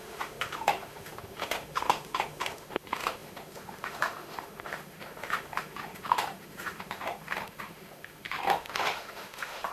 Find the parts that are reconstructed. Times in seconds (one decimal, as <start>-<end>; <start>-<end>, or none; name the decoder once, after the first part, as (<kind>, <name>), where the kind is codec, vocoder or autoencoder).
0.0-9.7 (autoencoder, DAC-VAE)

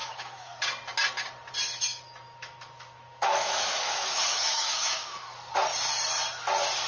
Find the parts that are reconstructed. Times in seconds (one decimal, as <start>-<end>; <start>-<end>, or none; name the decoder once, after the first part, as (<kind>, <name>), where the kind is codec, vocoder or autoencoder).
0.0-0.6 (autoencoder, DAC-VAE); 1.9-5.5

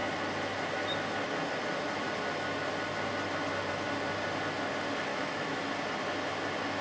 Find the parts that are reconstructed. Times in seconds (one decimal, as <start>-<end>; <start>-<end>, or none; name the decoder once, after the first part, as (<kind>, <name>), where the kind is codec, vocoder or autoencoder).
5.1-5.6 (autoencoder, DAC-VAE)

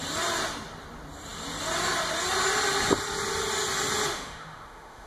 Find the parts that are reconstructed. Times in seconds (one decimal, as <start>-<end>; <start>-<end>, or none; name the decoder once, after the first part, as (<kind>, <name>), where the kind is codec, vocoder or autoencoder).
4.1-5.1 (autoencoder, DAC-VAE)

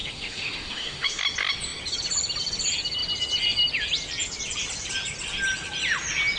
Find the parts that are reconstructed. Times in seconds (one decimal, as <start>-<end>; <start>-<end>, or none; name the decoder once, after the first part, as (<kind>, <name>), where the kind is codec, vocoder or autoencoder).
0.0-1.2 (autoencoder, DAC-VAE)

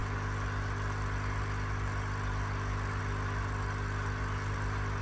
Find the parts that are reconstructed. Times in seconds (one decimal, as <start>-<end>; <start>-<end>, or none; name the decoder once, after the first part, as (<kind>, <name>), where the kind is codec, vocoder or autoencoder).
none

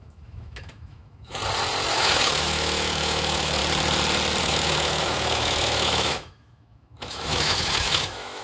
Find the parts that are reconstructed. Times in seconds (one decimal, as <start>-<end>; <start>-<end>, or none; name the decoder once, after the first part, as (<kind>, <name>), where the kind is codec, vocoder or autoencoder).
0.0-1.4 (autoencoder, DAC-VAE); 1.9-3.6; 4.4-8.4

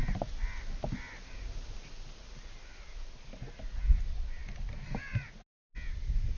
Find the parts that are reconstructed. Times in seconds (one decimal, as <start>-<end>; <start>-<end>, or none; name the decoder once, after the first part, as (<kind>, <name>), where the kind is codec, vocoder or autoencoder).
none